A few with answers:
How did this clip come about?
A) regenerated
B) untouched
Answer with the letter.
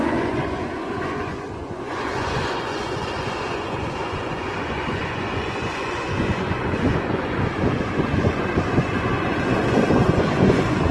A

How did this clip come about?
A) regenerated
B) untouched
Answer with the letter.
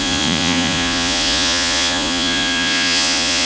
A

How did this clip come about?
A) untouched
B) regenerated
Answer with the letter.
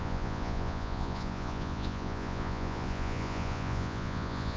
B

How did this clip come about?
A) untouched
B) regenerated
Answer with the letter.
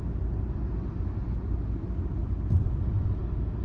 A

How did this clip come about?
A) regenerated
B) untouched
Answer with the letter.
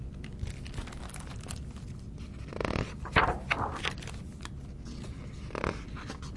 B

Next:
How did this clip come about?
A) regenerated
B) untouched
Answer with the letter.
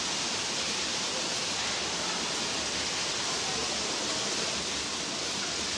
B